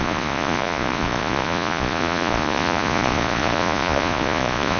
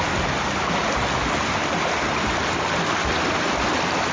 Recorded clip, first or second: second